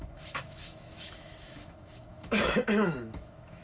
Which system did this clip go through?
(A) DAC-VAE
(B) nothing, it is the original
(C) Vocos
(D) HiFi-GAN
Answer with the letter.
A